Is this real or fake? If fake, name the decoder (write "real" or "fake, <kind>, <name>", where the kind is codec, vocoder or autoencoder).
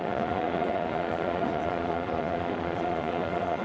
fake, vocoder, Vocos